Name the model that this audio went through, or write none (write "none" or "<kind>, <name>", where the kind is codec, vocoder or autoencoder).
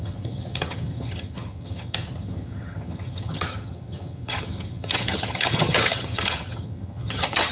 vocoder, HiFi-GAN